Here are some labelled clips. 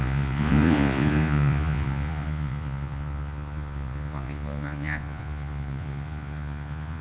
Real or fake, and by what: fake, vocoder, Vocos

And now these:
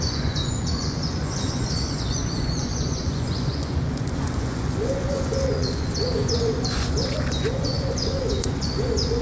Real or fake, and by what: fake, vocoder, Vocos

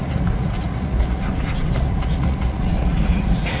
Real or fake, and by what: fake, vocoder, Vocos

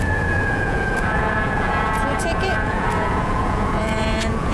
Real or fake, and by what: fake, vocoder, Vocos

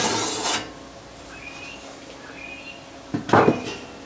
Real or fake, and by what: real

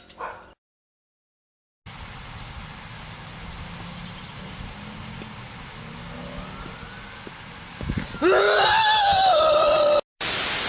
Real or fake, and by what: real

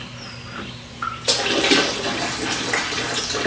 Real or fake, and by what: real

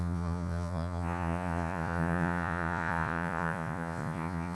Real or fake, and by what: fake, vocoder, Vocos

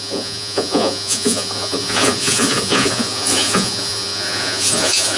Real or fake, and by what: fake, vocoder, Vocos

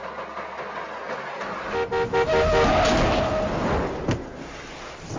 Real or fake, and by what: real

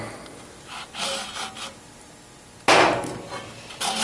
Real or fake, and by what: real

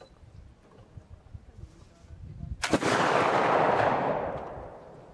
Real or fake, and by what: real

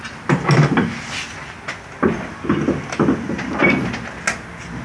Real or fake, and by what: real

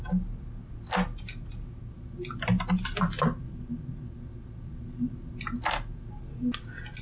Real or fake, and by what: real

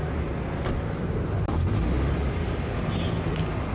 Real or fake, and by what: real